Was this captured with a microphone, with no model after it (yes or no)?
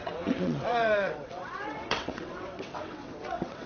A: no